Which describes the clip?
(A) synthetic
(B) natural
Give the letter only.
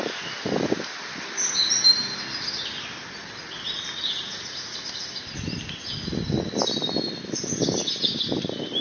B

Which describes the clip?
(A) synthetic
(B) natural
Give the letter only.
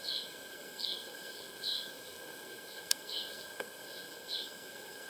A